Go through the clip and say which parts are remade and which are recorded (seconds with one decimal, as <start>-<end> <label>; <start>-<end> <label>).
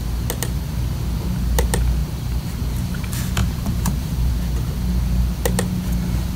0.0-2.0 recorded; 2.0-2.6 remade; 2.6-3.4 recorded; 3.4-4.3 remade; 4.3-6.4 recorded